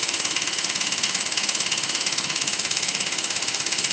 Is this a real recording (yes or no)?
no